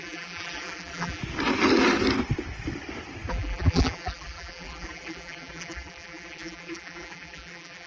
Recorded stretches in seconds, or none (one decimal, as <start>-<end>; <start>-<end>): 1.2-3.3